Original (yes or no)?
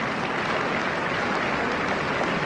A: yes